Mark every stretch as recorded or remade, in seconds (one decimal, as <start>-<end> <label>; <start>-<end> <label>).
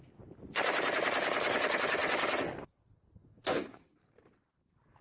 0.0-3.2 recorded; 3.2-3.8 remade; 3.8-5.0 recorded